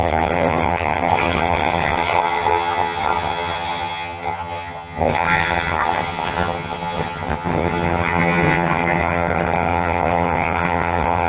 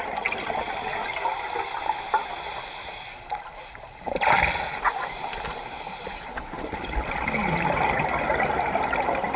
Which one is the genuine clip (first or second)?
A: second